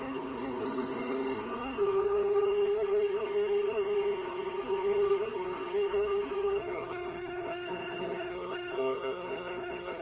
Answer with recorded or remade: remade